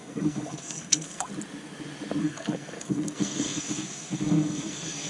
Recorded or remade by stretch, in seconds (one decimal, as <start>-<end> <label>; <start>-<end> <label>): 0.0-1.3 remade; 1.3-2.2 recorded; 2.2-5.1 remade